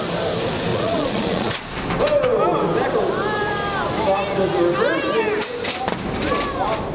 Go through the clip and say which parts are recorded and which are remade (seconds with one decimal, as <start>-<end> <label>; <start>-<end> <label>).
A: 0.0-0.7 recorded; 0.7-1.5 remade; 1.5-6.9 recorded